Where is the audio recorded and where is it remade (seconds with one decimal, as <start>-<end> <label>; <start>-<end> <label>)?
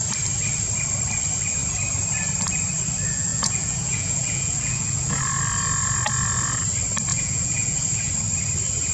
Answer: 0.0-3.3 recorded; 3.3-5.2 remade; 5.2-7.1 recorded; 7.1-8.1 remade; 8.1-8.9 recorded